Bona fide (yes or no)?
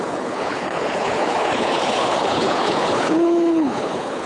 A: no